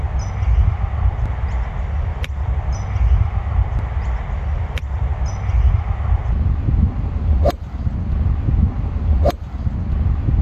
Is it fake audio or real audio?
real